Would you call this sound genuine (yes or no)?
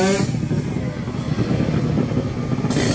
yes